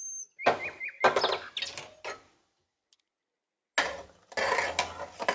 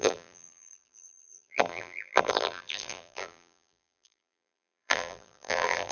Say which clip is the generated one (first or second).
second